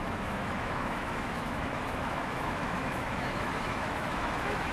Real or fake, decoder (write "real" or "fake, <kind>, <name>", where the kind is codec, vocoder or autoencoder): fake, autoencoder, DAC-VAE